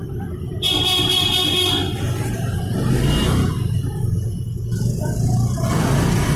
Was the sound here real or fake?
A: real